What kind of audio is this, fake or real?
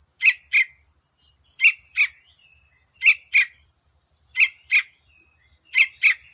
real